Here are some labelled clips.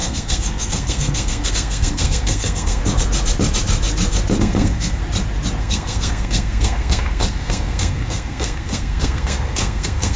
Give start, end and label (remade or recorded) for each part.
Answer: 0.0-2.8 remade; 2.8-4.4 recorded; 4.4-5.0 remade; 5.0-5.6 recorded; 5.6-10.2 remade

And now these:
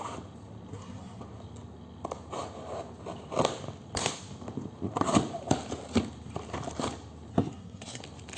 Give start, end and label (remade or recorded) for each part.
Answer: 0.0-0.7 recorded; 0.7-1.2 remade; 1.2-7.3 recorded; 7.3-8.0 remade; 8.0-8.4 recorded

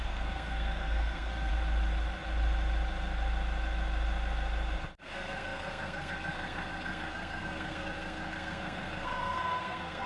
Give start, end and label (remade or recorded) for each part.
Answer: 0.0-1.5 remade; 1.5-5.0 recorded; 5.0-10.1 remade